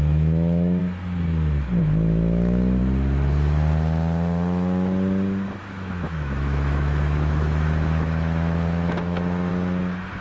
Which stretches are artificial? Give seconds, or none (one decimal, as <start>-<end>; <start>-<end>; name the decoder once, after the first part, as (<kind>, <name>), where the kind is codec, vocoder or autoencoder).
0.0-0.8 (autoencoder, DAC-VAE); 1.8-2.8; 5.6-9.5